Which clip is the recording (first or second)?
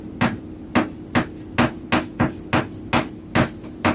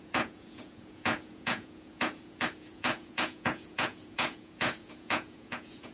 first